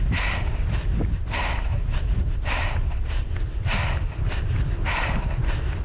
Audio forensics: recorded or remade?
recorded